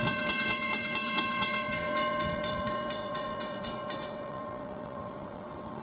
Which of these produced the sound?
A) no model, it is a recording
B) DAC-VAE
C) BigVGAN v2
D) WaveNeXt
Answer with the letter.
D